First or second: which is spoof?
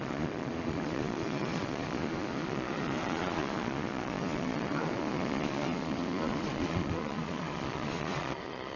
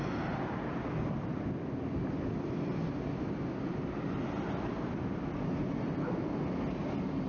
first